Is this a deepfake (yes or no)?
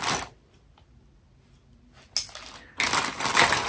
no